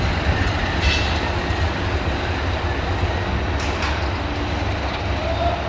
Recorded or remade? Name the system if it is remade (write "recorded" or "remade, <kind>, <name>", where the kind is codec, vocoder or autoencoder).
recorded